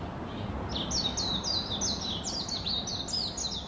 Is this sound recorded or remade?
recorded